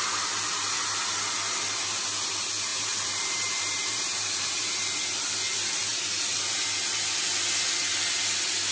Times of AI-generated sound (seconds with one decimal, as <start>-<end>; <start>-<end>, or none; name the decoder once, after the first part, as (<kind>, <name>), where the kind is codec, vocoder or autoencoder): 2.7-4.7 (vocoder, BigVGAN v2)